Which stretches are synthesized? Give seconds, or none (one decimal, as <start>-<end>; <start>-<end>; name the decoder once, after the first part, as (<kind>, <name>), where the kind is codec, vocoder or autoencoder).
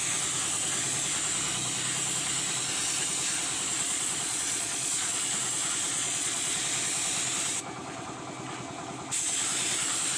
3.8-5.3 (vocoder, Vocos); 5.9-6.6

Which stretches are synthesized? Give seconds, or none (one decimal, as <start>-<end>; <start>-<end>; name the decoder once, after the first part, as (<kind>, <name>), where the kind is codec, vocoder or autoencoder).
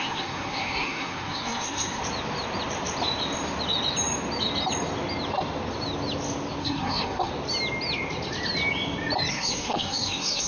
0.0-2.0 (codec, SNAC); 6.6-7.3; 9.3-10.5